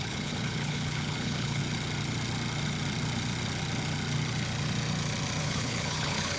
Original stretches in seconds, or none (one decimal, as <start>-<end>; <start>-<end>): 1.6-5.4